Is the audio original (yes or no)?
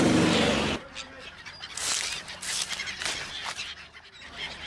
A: yes